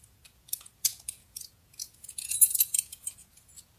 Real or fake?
fake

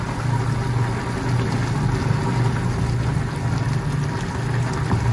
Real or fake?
real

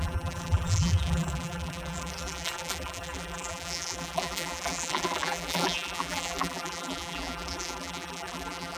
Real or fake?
fake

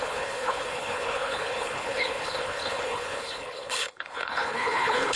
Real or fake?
fake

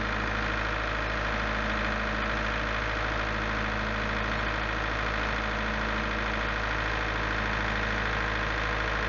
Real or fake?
real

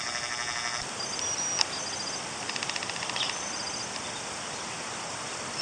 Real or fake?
real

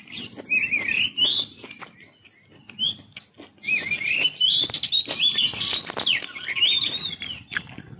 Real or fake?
real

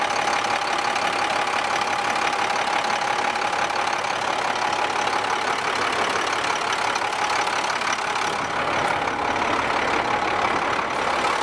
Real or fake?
real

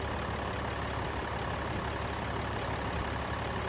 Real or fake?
real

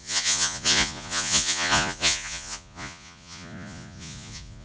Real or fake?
fake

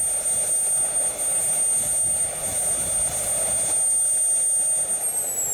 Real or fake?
real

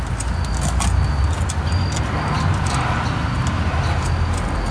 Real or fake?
real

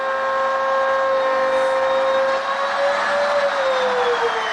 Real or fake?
real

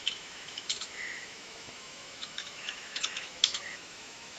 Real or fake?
fake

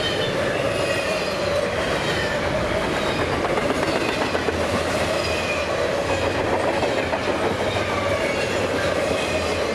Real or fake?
real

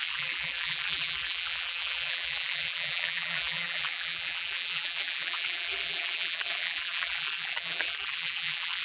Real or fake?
fake